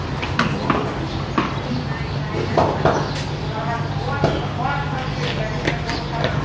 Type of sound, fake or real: real